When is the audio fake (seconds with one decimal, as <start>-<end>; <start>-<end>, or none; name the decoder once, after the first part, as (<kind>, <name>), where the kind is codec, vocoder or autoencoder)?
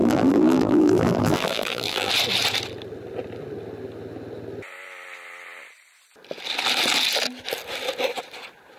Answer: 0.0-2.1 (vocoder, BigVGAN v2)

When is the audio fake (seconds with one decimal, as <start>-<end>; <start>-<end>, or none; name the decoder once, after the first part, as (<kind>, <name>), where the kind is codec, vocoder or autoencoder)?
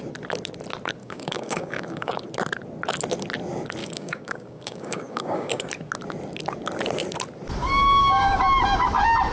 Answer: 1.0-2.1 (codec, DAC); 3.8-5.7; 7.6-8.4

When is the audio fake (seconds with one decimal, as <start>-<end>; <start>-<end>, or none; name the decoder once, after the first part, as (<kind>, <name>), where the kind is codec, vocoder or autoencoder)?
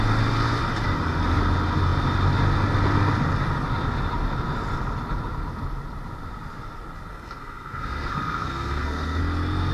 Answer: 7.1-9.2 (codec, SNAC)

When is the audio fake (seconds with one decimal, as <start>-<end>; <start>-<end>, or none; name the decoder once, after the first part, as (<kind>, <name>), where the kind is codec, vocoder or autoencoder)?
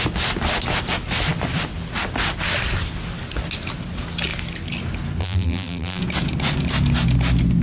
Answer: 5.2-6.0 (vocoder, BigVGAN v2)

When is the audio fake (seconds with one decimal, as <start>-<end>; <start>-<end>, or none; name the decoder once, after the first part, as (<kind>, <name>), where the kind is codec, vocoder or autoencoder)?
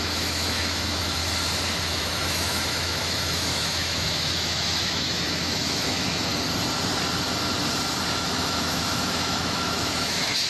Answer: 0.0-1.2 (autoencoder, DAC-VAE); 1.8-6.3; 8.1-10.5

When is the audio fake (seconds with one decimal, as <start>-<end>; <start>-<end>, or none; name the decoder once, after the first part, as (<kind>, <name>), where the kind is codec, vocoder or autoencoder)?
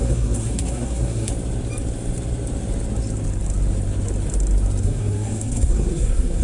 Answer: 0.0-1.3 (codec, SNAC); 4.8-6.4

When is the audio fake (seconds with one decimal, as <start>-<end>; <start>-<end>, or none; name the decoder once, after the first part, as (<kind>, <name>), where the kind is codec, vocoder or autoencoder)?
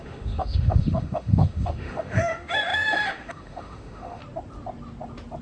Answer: 0.0-4.2 (autoencoder, DAC-VAE)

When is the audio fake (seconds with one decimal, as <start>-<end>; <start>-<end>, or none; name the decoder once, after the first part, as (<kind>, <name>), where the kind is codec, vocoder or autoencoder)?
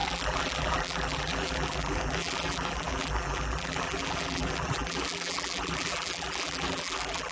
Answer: 0.0-7.3 (vocoder, BigVGAN v2)